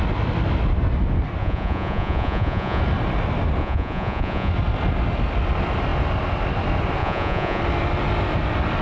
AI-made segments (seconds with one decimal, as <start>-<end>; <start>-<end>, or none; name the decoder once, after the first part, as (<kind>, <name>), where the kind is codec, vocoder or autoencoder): 1.4-2.8 (vocoder, Vocos); 3.6-4.5; 7.0-7.6